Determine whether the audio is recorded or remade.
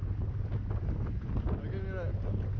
recorded